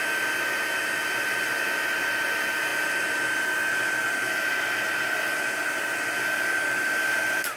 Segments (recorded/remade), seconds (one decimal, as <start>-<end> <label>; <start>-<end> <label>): 0.0-7.6 recorded